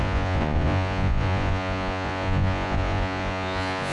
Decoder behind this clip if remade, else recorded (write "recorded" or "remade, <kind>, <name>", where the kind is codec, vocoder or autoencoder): remade, vocoder, Vocos